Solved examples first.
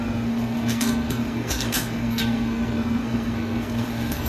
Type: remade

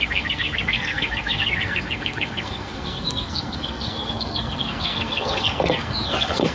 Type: remade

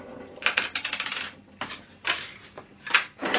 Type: recorded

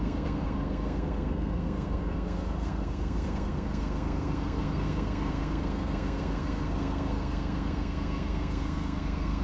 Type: remade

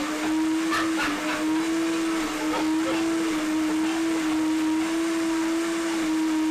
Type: recorded